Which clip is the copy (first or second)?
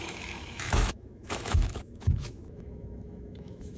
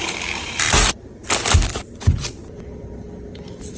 first